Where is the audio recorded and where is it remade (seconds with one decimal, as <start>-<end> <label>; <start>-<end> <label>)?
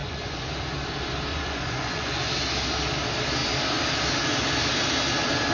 0.0-0.5 remade; 0.5-1.3 recorded; 1.3-2.3 remade; 2.3-5.5 recorded